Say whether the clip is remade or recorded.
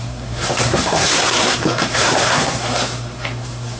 remade